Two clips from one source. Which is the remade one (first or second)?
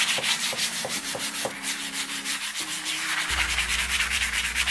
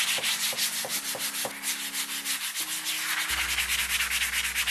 first